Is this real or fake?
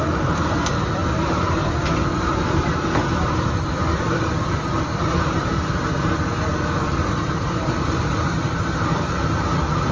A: fake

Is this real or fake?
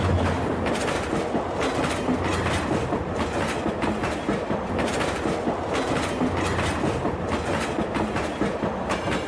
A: real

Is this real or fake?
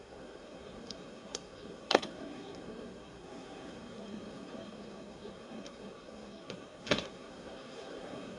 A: fake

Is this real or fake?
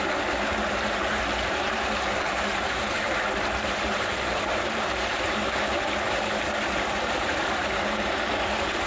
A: fake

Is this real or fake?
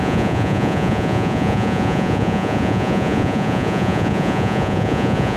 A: fake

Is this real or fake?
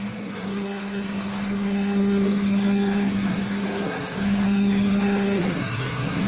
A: fake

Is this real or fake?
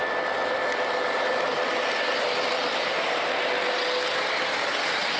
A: real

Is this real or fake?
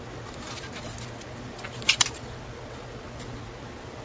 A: real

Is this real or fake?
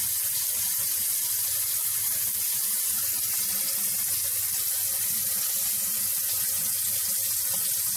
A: real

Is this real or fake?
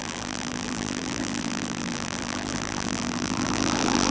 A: fake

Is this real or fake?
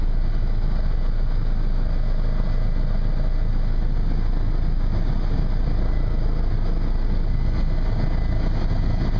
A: real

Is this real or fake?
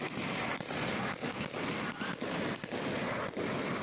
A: real